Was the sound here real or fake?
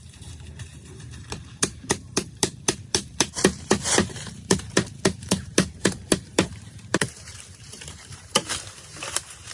fake